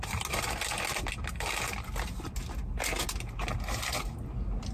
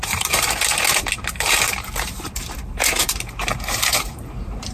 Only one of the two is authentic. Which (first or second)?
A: first